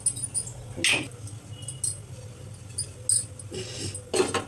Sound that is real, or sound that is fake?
real